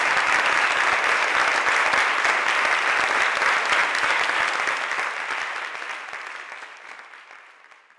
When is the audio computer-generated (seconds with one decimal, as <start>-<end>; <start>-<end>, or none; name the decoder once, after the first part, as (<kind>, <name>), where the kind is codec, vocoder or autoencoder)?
none